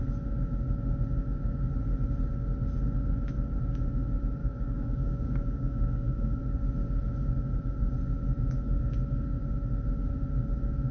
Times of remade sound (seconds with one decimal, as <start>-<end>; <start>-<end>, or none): 4.4-6.4